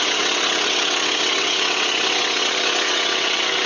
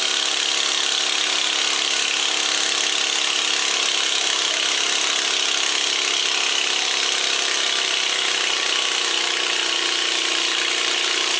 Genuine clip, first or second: second